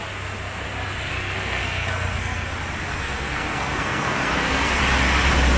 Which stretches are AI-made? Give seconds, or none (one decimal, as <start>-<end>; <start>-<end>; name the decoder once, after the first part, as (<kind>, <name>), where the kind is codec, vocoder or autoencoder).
1.1-2.5 (codec, SNAC); 2.9-4.8